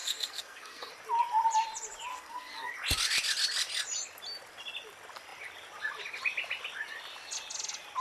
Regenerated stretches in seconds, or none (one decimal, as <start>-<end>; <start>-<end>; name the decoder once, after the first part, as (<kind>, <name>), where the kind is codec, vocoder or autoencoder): 0.0-0.9 (codec, SNAC); 2.1-2.7